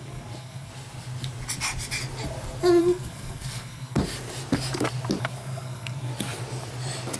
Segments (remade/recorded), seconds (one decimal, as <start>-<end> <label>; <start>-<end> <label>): 0.0-0.7 remade; 0.7-2.8 recorded; 2.8-4.0 remade; 4.0-5.2 recorded; 5.2-6.1 remade; 6.1-7.2 recorded